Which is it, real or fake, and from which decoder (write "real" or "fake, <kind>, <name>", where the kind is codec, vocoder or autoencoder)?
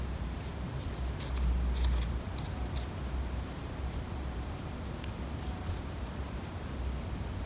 real